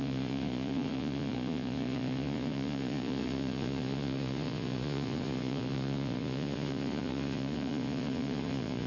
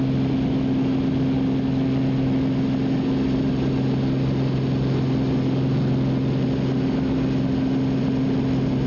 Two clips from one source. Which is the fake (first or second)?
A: first